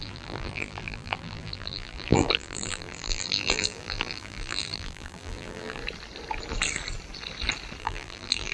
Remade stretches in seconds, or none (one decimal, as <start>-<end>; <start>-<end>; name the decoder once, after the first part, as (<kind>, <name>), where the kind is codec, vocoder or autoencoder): 0.0-5.8 (vocoder, BigVGAN v2); 7.8-8.5